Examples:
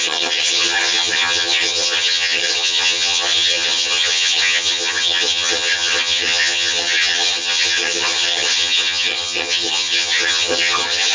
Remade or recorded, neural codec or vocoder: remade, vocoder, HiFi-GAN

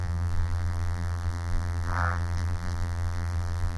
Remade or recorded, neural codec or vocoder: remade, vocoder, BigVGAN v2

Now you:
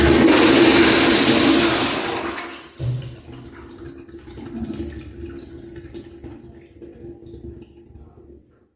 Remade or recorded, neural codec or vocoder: recorded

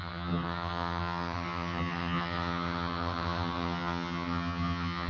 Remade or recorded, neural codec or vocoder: remade, vocoder, HiFi-GAN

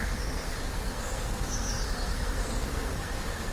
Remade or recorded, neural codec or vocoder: remade, codec, SNAC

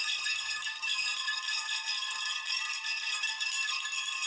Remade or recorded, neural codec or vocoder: remade, codec, SNAC